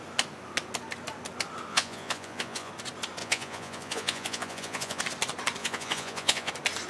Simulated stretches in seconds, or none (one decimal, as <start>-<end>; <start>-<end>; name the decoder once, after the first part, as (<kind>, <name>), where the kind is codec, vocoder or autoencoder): 1.7-2.7 (vocoder, Vocos); 3.2-5.0; 5.6-6.5